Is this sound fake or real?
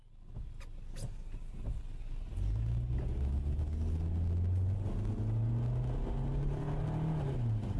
real